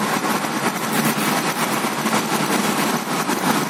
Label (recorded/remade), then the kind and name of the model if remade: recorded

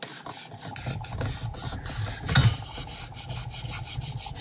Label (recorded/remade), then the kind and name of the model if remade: recorded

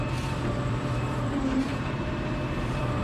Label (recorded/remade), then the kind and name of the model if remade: remade, vocoder, BigVGAN v2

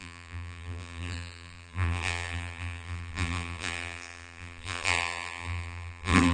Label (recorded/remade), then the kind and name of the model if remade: remade, vocoder, BigVGAN v2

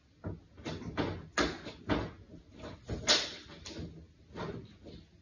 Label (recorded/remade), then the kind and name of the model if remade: recorded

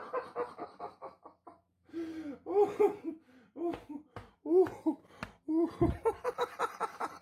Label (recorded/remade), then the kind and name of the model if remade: recorded